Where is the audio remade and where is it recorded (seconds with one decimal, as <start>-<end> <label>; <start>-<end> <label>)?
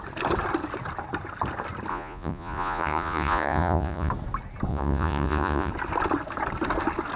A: 0.0-1.9 recorded; 1.9-4.1 remade; 4.1-4.7 recorded; 4.7-5.7 remade; 5.7-7.2 recorded